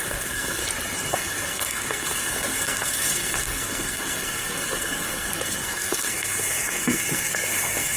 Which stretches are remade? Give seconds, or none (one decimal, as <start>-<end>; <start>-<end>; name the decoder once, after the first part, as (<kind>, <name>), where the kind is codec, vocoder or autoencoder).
0.0-0.6 (codec, SNAC); 1.1-8.0